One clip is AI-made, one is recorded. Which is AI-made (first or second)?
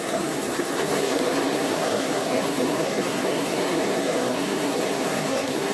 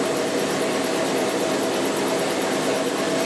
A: first